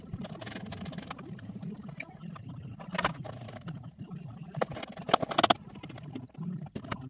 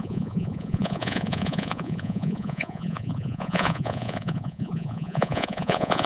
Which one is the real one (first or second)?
first